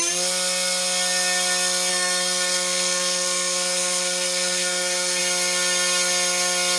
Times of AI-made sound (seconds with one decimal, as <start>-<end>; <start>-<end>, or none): 1.9-5.2